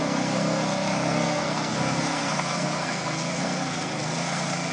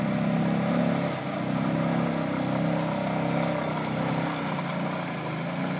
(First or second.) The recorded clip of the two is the second